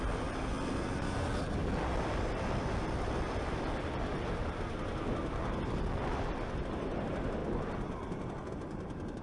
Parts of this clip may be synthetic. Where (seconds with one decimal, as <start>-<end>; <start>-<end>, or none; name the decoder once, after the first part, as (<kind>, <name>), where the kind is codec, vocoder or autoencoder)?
none